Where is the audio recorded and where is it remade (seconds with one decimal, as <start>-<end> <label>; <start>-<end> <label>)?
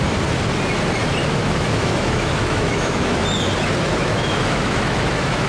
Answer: 0.0-1.2 recorded; 1.2-3.2 remade; 3.2-3.9 recorded; 3.9-5.5 remade